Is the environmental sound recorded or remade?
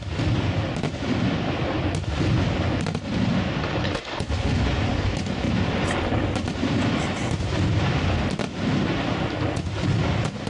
recorded